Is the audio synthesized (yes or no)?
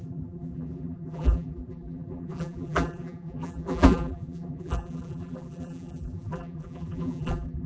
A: yes